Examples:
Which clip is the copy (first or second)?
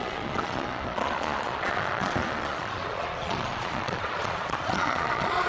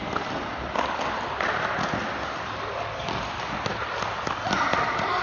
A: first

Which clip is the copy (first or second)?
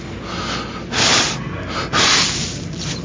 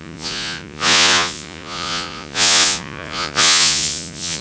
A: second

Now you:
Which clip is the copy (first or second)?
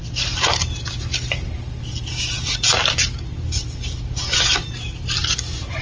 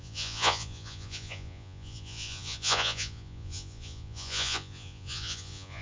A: second